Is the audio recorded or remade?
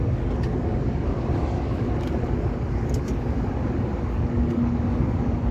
remade